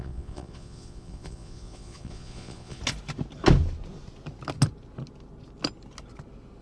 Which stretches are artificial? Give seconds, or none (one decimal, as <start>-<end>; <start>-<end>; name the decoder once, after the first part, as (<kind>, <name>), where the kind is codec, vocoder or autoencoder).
0.0-2.8 (vocoder, Vocos)